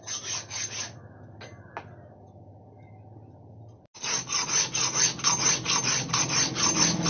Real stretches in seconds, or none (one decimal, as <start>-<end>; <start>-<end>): 0.0-7.1